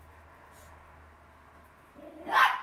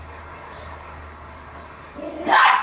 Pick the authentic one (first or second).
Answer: first